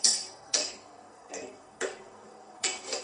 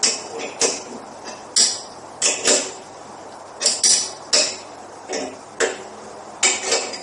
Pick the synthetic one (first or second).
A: first